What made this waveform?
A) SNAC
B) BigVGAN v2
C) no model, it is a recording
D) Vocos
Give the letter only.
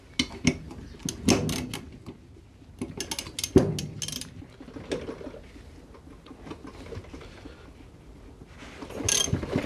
C